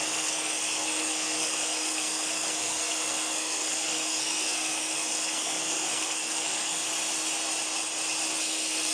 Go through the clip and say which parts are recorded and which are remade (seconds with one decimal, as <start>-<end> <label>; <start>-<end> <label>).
0.0-6.8 remade; 6.8-8.4 recorded; 8.4-8.9 remade